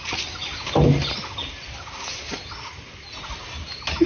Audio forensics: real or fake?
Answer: real